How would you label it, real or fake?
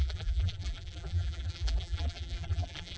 fake